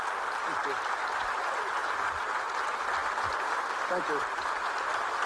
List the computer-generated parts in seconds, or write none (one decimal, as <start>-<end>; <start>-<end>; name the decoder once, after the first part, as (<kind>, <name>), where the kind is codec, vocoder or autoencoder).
none